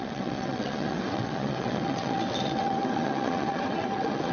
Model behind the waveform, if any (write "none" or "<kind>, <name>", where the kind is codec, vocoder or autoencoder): vocoder, WaveNeXt